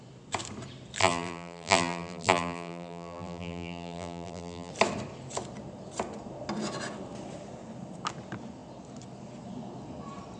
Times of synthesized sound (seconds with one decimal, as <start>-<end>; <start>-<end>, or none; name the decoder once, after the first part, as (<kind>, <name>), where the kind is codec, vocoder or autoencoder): 1.0-4.7 (vocoder, BigVGAN v2)

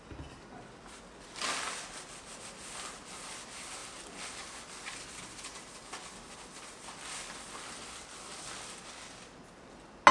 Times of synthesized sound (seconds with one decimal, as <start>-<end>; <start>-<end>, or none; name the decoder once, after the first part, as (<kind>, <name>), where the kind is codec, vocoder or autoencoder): none